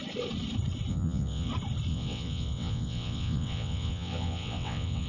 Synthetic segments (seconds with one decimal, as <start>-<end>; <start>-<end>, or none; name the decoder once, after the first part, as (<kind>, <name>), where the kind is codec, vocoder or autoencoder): 0.9-1.5 (vocoder, WaveNeXt); 1.9-5.1